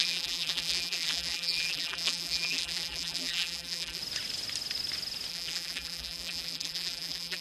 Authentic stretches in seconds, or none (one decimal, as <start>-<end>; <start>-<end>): 4.0-5.3